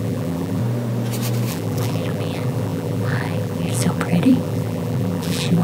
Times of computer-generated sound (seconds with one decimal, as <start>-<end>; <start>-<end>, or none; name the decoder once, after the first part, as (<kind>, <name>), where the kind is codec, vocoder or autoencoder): 0.0-0.6 (vocoder, BigVGAN v2); 1.5-5.6